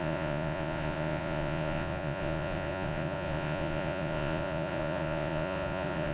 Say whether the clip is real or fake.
fake